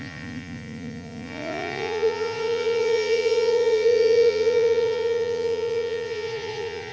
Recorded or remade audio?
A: remade